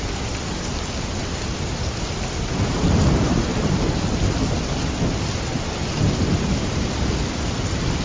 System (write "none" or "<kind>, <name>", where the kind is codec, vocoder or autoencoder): none